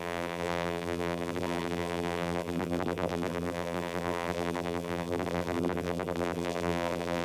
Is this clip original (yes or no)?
no